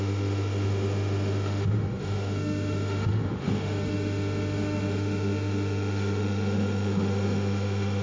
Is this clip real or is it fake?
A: fake